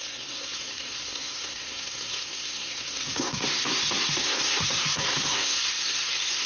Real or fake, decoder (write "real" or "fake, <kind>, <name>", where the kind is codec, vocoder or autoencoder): fake, codec, SNAC